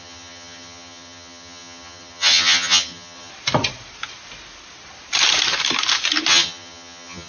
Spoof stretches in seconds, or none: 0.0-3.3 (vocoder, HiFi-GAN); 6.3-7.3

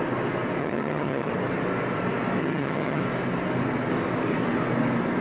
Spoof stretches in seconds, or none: 0.6-1.3 (vocoder, HiFi-GAN); 2.4-3.0

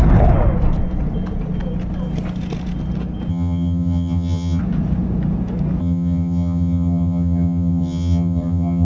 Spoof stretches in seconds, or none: 3.3-4.6 (vocoder, HiFi-GAN); 5.8-8.8

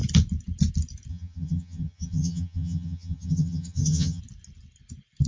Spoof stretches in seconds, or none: 1.1-4.2 (vocoder, HiFi-GAN)

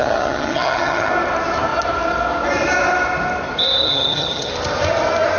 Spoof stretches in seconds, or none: 0.0-1.1 (vocoder, HiFi-GAN); 3.8-4.5

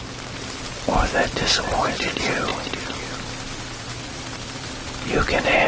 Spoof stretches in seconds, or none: none